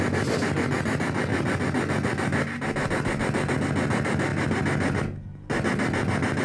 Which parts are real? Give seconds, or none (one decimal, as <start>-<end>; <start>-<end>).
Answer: 0.0-6.4